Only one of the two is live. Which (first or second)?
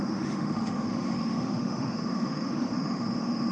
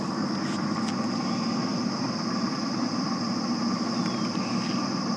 second